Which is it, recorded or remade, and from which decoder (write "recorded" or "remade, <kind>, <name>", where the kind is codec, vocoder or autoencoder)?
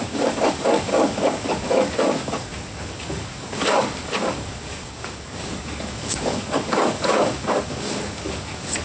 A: remade, codec, DAC